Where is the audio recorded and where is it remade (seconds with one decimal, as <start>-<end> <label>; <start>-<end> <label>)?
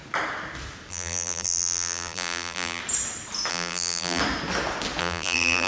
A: 0.0-0.9 recorded; 0.9-2.8 remade; 2.8-3.5 recorded; 3.5-4.2 remade; 4.2-5.0 recorded; 5.0-5.7 remade